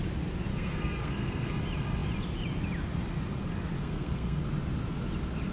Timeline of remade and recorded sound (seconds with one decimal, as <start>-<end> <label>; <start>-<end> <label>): 0.0-0.5 recorded; 0.5-1.5 remade; 1.5-3.8 recorded; 3.8-4.4 remade; 4.4-5.5 recorded